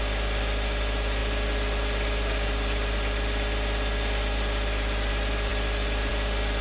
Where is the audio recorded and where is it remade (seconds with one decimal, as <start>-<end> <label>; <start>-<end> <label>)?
0.0-6.6 recorded